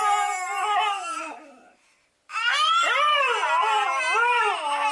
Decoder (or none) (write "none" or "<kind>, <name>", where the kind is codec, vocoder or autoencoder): none